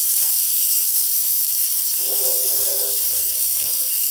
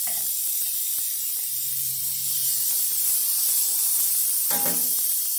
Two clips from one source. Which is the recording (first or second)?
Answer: second